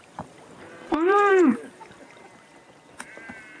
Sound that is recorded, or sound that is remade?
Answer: remade